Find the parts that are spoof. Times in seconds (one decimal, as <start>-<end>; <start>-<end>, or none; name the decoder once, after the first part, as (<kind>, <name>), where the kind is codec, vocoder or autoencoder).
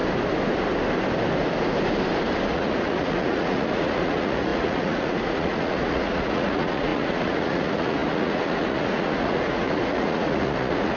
2.5-11.0 (vocoder, Vocos)